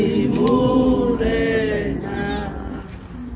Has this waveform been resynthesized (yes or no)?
no